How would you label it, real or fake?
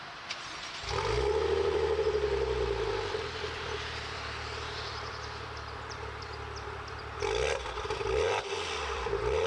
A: fake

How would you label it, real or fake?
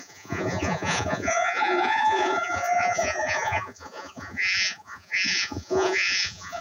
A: fake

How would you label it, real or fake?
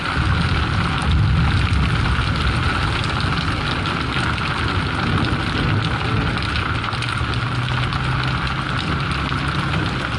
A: real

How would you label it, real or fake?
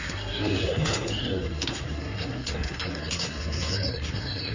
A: fake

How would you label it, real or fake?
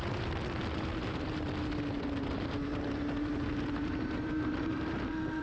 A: fake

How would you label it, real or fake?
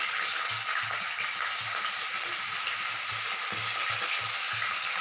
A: real